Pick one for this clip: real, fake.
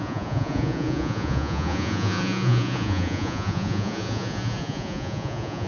fake